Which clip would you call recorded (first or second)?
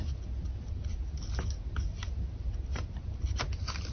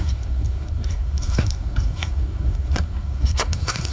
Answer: first